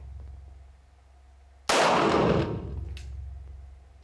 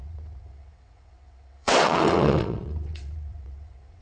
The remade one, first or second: second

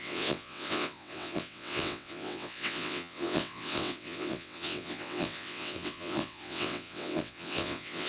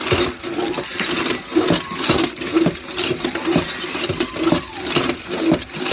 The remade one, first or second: first